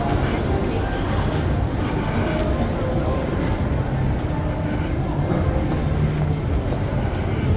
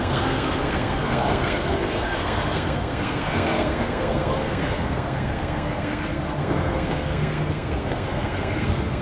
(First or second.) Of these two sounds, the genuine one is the first